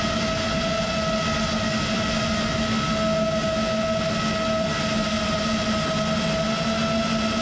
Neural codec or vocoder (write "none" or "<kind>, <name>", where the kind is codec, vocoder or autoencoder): none